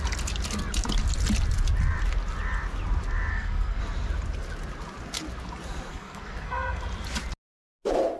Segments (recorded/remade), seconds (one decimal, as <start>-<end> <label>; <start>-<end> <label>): 0.0-3.3 recorded; 3.3-3.8 remade; 3.8-5.9 recorded; 5.9-6.8 remade; 6.8-8.2 recorded